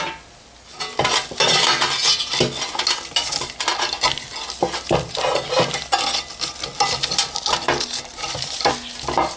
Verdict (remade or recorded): recorded